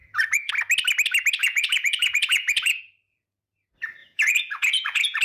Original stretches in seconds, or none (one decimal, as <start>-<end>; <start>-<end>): 0.5-1.4; 2.8-4.0